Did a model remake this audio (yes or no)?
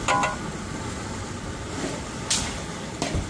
no